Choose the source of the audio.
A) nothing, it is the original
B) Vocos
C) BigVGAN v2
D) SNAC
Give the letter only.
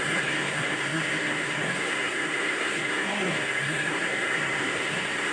D